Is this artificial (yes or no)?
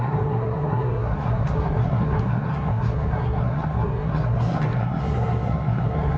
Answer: yes